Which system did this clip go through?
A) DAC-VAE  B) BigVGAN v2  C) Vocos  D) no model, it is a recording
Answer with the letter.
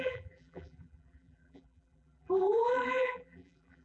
B